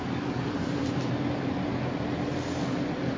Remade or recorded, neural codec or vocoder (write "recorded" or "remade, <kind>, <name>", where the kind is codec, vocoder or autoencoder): recorded